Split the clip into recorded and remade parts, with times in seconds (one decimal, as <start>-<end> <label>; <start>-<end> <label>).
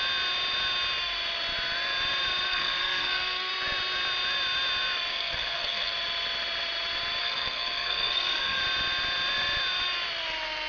0.0-2.5 recorded; 2.5-3.5 remade; 3.5-5.1 recorded; 5.1-5.9 remade; 5.9-7.2 recorded; 7.2-8.6 remade; 8.6-10.7 recorded